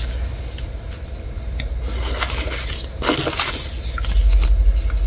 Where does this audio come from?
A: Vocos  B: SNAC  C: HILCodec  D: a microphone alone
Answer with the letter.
D